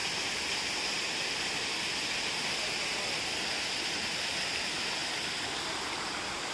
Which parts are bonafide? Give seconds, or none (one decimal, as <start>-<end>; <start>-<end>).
0.0-6.5